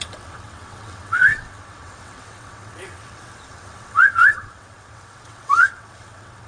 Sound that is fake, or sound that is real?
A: fake